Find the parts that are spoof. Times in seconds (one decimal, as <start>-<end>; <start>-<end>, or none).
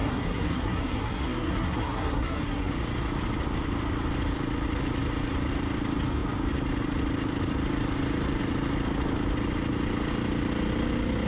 0.0-2.7